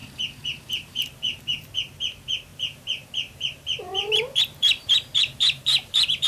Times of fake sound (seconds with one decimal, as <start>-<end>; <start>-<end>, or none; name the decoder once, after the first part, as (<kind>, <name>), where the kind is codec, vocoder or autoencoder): 0.0-1.4 (vocoder, BigVGAN v2); 2.5-6.3